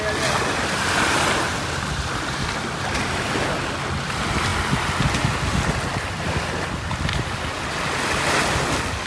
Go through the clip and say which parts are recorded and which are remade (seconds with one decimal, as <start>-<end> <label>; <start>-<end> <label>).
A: 0.0-9.1 recorded